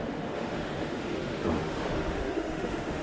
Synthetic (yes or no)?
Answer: yes